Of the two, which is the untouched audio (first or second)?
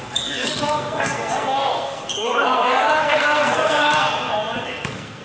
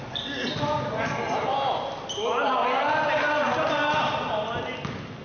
second